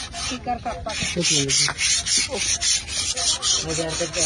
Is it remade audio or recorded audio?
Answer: recorded